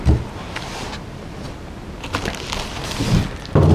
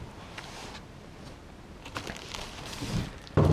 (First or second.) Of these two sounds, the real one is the first